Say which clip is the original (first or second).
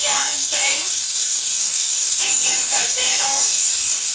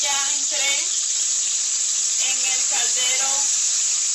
second